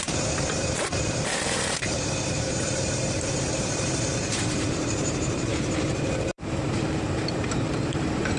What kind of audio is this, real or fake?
fake